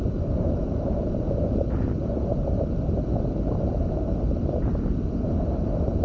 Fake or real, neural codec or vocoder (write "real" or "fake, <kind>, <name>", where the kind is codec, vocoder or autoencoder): fake, vocoder, BigVGAN v2